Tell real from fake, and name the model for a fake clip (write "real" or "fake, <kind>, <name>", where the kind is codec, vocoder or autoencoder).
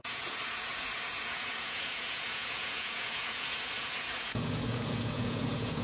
fake, vocoder, Vocos